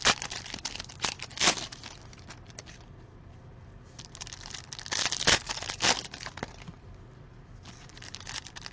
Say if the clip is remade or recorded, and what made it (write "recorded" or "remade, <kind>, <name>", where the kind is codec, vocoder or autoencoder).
recorded